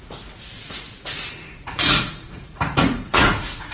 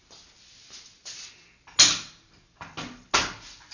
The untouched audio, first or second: second